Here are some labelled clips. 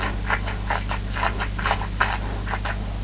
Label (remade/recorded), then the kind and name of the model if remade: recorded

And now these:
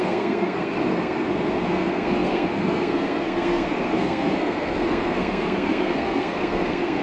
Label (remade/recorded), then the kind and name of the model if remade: remade, codec, SNAC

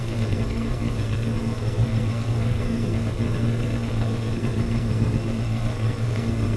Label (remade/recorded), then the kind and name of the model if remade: remade, codec, SNAC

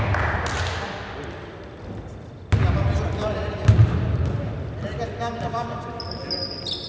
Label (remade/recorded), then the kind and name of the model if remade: recorded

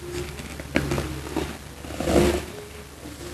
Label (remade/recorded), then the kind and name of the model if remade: recorded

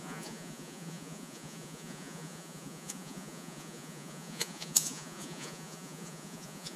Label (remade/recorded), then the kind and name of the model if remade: remade, vocoder, Vocos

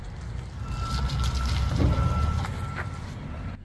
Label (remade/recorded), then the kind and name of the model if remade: recorded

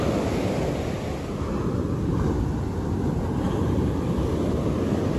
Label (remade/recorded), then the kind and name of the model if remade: recorded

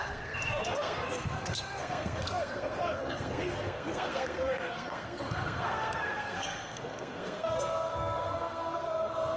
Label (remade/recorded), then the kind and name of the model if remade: remade, codec, SNAC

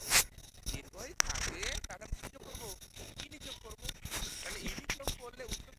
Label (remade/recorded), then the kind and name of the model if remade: recorded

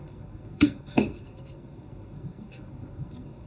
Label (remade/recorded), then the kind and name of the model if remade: remade, codec, SNAC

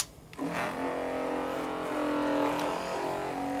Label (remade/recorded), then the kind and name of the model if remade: recorded